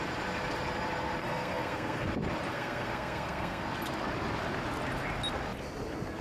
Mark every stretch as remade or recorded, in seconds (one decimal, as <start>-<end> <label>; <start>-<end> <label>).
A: 0.0-1.2 recorded; 1.2-2.1 remade; 2.1-2.5 recorded; 2.5-3.6 remade; 3.6-6.2 recorded